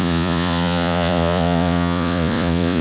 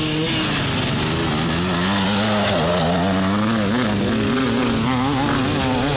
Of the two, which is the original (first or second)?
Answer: second